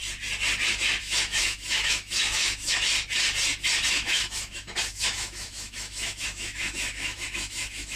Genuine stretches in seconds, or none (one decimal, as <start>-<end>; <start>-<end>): 0.0-1.0; 2.9-3.9